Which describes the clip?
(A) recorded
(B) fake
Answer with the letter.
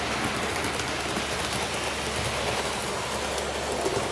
A